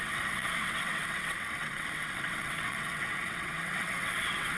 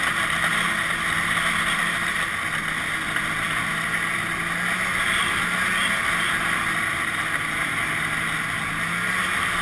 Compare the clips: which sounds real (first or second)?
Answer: second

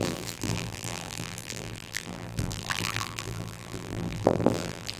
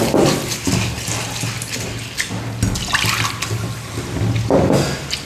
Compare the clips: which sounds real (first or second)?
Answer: second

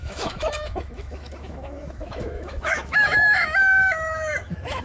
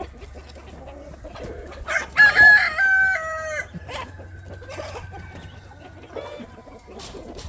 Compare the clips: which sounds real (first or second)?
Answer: second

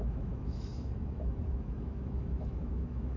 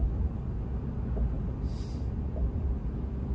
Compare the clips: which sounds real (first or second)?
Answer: second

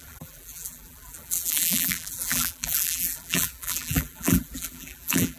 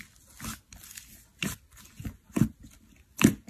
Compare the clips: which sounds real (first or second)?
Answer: second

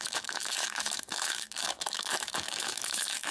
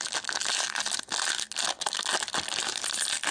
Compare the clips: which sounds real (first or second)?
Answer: second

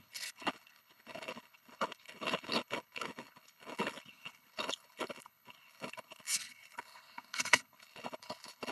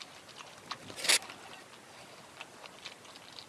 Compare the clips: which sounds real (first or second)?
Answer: second